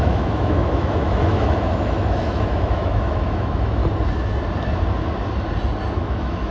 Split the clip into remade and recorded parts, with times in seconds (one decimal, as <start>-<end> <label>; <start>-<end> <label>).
0.0-3.8 remade; 3.8-5.9 recorded; 5.9-6.5 remade